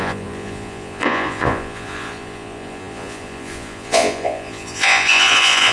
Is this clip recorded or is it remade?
remade